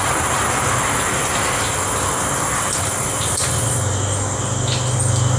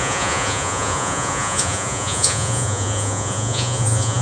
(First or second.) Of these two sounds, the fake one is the second